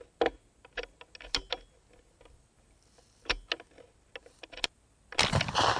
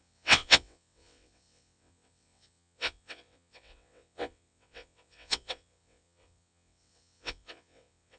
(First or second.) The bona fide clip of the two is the first